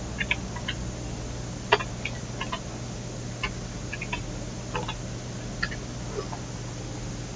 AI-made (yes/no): no